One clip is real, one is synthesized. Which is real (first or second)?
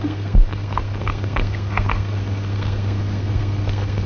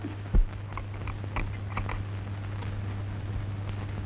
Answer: second